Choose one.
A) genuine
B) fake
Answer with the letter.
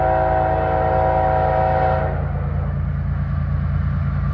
A